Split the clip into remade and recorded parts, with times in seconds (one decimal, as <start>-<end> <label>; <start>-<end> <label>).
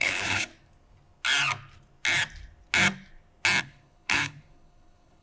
0.0-0.5 remade; 0.5-3.6 recorded; 3.6-5.2 remade